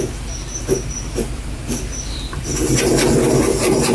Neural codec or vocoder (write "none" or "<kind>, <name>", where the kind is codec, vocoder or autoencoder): none